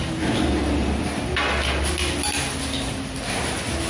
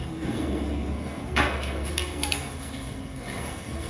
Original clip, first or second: first